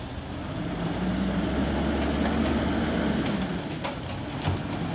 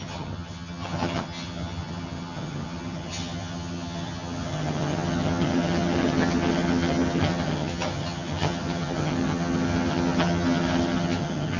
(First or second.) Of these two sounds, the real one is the first